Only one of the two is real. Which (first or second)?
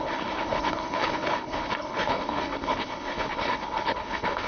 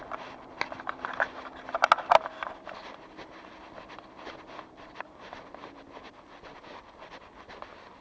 second